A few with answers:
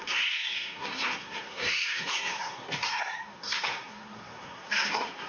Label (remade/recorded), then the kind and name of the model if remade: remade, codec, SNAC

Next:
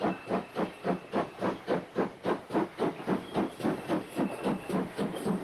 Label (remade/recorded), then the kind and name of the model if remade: recorded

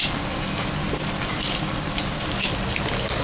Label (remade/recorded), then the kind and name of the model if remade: recorded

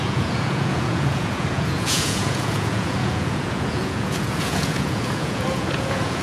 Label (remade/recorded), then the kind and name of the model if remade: remade, vocoder, Vocos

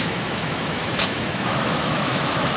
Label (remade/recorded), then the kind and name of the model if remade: remade, autoencoder, DAC-VAE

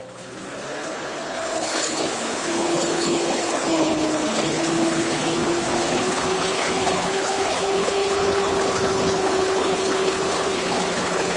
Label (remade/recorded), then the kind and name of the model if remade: remade, codec, HILCodec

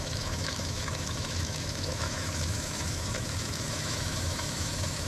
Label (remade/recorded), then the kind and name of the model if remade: remade, autoencoder, DAC-VAE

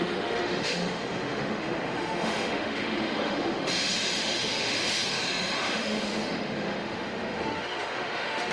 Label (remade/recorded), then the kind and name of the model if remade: remade, autoencoder, DAC-VAE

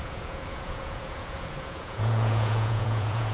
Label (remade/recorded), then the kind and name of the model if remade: remade, vocoder, Vocos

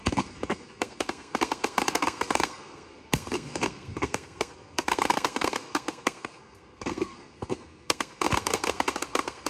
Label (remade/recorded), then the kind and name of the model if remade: remade, codec, SNAC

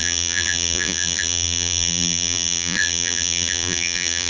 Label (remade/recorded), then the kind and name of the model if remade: remade, vocoder, BigVGAN v2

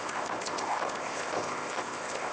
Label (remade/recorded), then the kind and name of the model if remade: remade, codec, ZipCodec